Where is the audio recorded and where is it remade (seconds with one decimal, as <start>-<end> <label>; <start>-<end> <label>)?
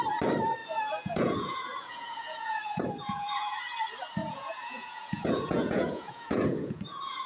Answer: 0.0-0.6 recorded; 0.6-3.6 remade; 3.6-4.2 recorded; 4.2-7.3 remade